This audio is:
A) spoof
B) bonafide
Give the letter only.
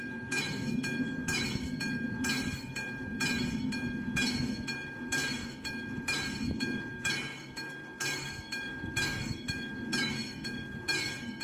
A